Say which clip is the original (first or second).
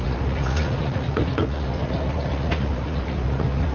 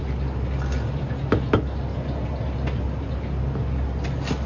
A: second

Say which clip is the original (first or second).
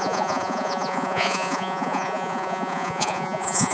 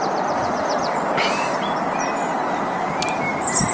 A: second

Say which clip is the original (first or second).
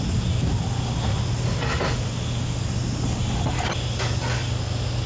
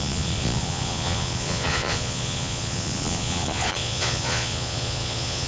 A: first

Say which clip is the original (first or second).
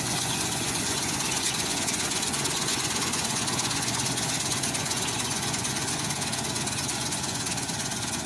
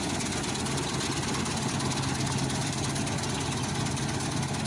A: second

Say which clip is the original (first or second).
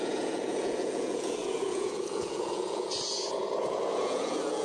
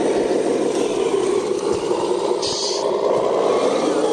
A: second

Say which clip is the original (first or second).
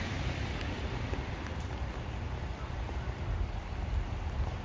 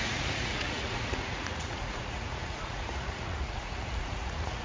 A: first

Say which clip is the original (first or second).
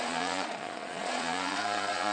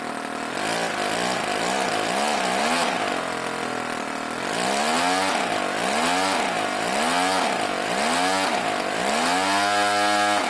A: second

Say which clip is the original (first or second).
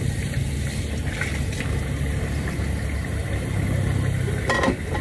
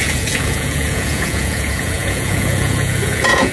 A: first